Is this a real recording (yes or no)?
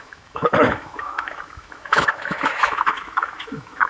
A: no